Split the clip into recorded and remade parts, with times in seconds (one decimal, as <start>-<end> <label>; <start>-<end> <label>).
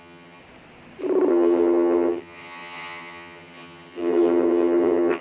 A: 0.0-0.4 remade; 0.4-1.3 recorded; 1.3-5.2 remade